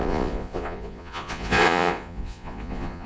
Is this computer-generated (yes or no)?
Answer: yes